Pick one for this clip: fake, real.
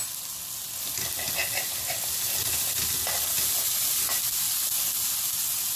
real